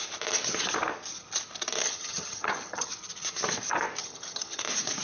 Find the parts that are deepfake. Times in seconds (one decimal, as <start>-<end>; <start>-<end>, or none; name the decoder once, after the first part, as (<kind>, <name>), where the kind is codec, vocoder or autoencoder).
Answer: 1.8-2.9 (vocoder, HiFi-GAN); 4.0-4.6